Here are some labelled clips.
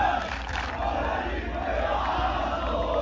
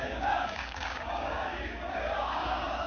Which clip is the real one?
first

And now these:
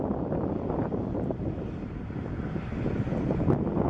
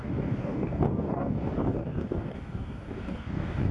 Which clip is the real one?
first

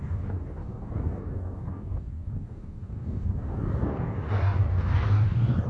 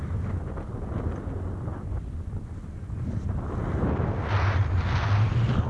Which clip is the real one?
second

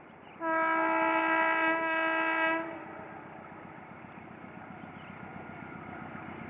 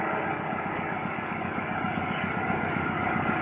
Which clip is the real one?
first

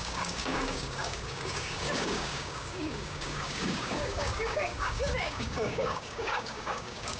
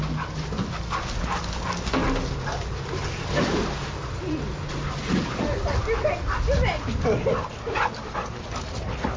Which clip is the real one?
second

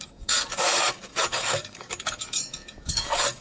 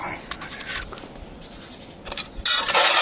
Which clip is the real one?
second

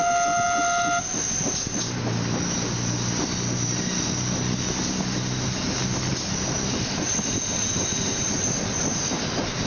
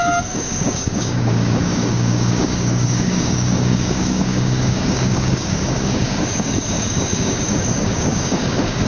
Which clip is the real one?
first